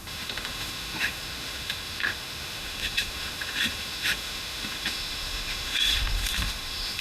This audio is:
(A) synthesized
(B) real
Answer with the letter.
A